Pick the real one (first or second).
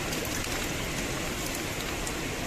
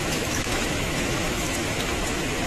first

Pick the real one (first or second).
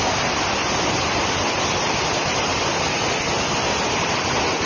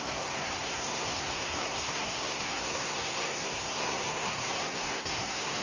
first